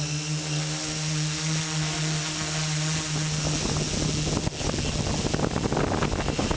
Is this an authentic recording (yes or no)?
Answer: yes